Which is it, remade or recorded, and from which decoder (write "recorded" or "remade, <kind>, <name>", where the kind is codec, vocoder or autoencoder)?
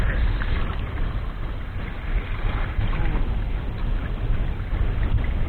recorded